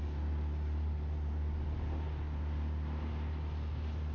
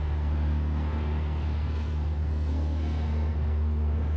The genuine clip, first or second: first